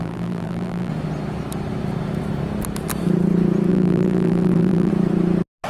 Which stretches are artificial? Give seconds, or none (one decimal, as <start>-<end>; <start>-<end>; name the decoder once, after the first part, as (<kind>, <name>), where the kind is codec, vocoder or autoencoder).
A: 0.0-0.9 (vocoder, BigVGAN v2); 3.7-4.9